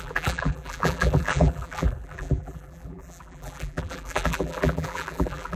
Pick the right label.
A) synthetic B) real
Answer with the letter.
A